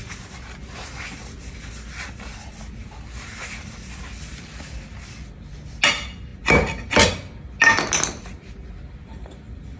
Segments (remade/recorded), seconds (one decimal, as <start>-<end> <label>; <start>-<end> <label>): 0.0-9.8 recorded